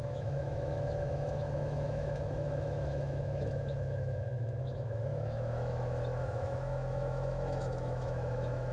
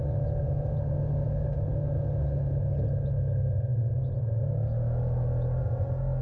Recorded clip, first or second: second